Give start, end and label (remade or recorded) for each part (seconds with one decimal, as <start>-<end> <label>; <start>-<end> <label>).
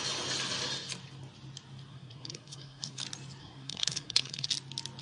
0.0-1.9 recorded; 1.9-3.0 remade; 3.0-3.4 recorded; 3.4-4.5 remade; 4.5-5.0 recorded